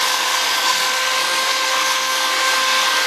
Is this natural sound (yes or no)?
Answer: no